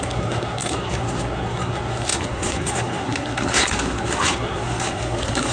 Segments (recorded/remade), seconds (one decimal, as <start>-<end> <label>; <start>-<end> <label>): 0.0-5.5 remade